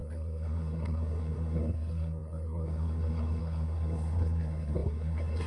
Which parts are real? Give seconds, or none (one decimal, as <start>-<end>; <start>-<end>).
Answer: none